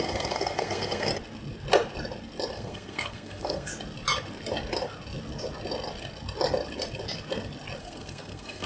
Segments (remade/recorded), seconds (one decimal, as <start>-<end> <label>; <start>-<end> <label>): 0.0-1.1 remade; 1.1-2.5 recorded; 2.5-3.7 remade; 3.7-7.8 recorded; 7.8-8.7 remade